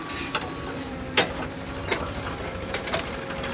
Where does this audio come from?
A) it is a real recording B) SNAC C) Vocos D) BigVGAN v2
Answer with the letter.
A